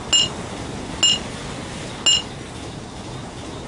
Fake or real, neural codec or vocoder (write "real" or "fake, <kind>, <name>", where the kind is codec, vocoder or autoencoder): real